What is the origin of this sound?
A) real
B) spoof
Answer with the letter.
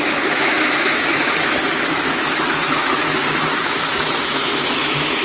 B